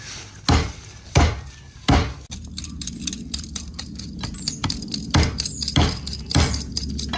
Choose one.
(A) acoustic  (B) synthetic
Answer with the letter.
A